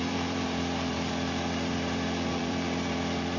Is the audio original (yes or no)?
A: no